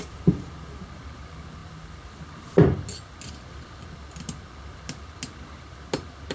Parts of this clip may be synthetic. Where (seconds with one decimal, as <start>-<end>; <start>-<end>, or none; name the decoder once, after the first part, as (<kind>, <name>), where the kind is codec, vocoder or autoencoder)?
none

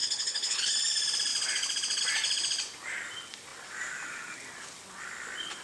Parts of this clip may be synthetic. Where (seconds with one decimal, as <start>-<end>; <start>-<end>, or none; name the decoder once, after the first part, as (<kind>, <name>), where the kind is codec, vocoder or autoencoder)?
0.0-0.7 (codec, HILCodec)

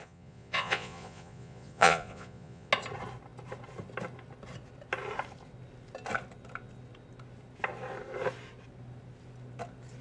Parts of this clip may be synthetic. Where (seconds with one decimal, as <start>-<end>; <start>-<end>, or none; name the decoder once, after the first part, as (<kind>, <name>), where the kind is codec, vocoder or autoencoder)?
0.0-2.7 (vocoder, Vocos)